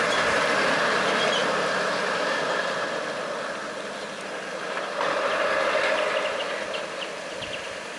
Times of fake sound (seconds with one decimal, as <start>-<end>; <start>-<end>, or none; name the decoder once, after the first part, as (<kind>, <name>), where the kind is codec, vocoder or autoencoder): none